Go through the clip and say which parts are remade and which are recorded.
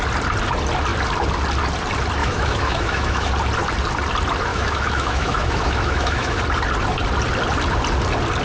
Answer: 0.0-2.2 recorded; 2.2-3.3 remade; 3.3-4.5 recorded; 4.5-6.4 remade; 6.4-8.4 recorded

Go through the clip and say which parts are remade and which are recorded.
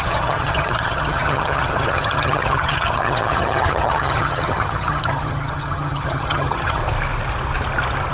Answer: 0.0-6.8 remade; 6.8-8.1 recorded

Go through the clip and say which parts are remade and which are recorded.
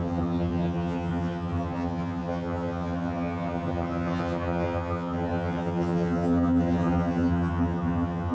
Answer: 0.0-8.3 remade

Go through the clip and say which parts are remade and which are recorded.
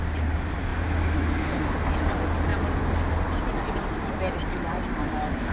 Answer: 0.0-5.5 recorded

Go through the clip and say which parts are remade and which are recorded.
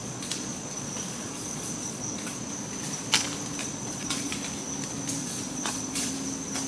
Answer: 0.0-2.5 remade; 2.5-3.6 recorded; 3.6-4.3 remade; 4.3-5.2 recorded; 5.2-6.1 remade; 6.1-6.7 recorded